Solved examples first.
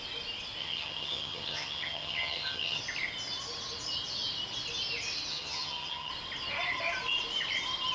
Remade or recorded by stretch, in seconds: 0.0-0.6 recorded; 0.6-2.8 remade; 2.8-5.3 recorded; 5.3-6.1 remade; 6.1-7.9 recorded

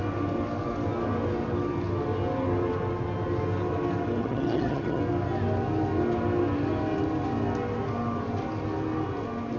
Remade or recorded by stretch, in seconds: 0.0-4.2 recorded; 4.2-5.0 remade; 5.0-9.6 recorded